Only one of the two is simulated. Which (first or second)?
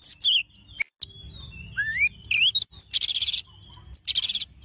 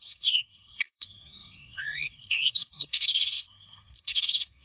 second